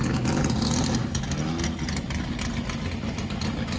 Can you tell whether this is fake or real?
real